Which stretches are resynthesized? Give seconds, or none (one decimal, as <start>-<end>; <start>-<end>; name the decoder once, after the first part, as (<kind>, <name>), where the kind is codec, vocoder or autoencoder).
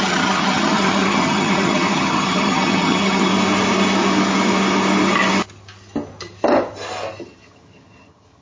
0.0-3.3 (vocoder, HiFi-GAN); 7.2-8.4